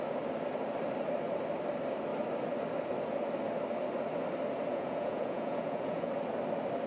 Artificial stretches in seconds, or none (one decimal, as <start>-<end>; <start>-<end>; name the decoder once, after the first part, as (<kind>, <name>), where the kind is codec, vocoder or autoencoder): 4.7-6.1 (vocoder, Vocos)